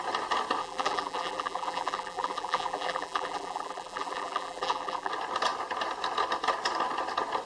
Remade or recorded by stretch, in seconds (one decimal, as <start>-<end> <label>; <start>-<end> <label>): 0.0-0.6 recorded; 0.6-5.1 remade; 5.1-7.5 recorded